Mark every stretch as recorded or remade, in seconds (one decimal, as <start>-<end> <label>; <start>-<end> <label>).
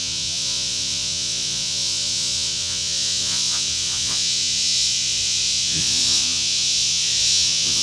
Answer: 0.0-7.8 remade